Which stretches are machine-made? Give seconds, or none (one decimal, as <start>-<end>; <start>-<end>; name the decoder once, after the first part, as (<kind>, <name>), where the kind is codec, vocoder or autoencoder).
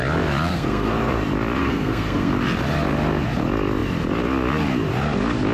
0.5-1.1 (codec, SNAC); 1.6-2.3